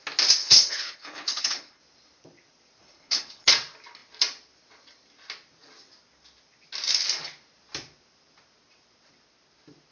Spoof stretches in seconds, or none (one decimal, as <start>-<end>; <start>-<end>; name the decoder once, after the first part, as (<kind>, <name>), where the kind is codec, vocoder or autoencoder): 0.4-1.8 (codec, HILCodec); 2.8-3.5